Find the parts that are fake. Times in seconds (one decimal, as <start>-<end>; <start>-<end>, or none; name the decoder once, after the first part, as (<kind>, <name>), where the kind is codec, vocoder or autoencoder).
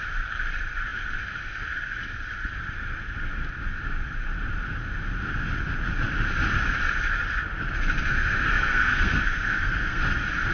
8.1-10.0 (codec, SNAC)